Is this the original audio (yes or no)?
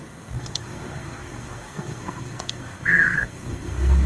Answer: no